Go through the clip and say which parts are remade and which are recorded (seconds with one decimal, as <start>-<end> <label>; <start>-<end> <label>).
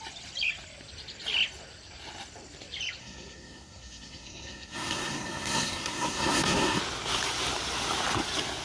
0.0-3.0 recorded; 3.0-6.8 remade; 6.8-8.6 recorded